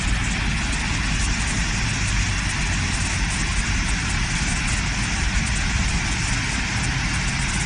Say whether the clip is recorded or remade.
recorded